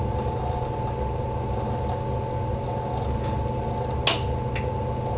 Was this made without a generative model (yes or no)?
yes